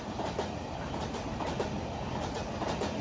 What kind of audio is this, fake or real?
real